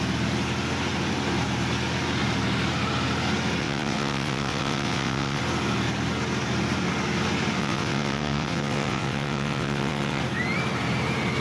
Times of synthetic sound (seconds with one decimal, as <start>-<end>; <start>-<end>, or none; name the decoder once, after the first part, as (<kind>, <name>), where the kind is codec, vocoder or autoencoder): 3.6-5.4 (vocoder, WaveNeXt); 7.6-10.2